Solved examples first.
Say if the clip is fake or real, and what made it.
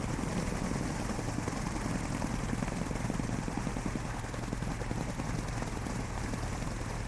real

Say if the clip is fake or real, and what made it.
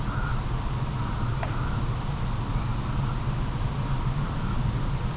real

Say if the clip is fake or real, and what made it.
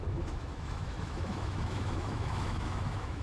fake, autoencoder, DAC-VAE